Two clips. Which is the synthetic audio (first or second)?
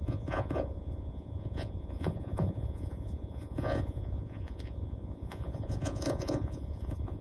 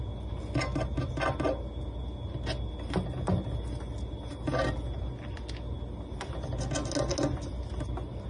first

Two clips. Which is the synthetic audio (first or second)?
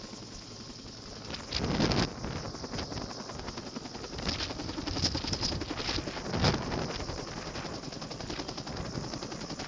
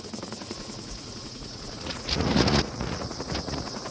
second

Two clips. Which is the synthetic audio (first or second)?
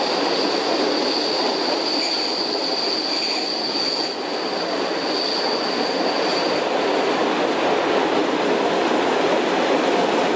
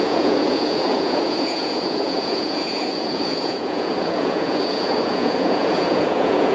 second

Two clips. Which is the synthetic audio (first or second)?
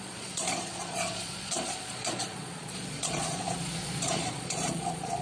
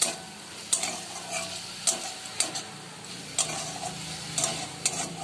first